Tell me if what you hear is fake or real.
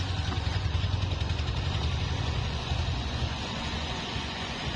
fake